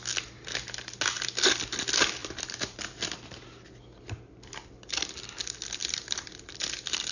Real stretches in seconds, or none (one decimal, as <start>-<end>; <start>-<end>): 0.0-2.2; 2.8-5.8